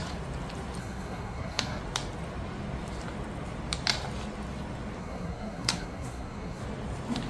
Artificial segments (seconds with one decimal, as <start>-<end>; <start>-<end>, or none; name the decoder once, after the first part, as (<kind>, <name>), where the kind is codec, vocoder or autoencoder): 0.8-1.8 (codec, SNAC); 5.0-6.6